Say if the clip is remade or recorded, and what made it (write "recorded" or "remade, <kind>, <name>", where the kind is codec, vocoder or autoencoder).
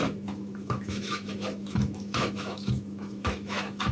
remade, autoencoder, DAC-VAE